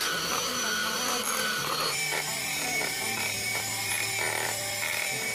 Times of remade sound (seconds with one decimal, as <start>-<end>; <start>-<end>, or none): 0.8-4.0